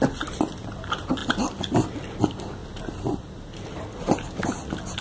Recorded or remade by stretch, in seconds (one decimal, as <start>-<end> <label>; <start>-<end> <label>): 0.0-5.0 recorded